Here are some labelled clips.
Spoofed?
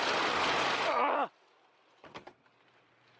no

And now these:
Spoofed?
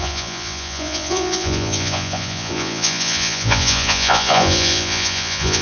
yes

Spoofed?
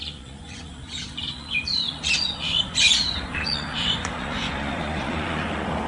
yes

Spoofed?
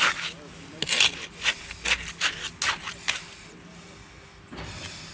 no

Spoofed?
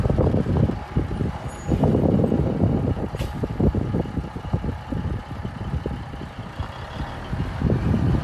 no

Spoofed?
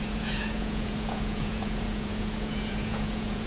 yes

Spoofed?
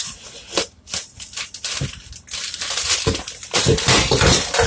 no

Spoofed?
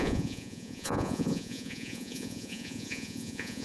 yes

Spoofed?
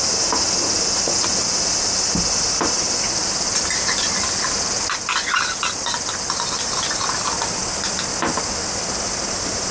no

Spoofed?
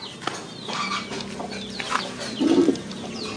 no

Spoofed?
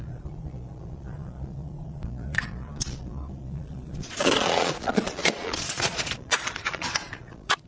yes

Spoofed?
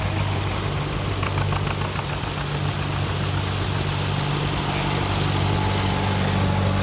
no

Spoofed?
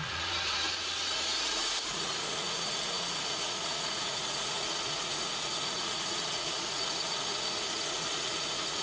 yes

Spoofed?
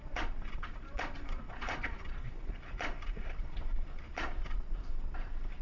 yes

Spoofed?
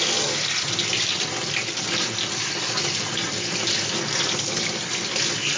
no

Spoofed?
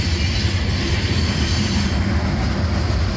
no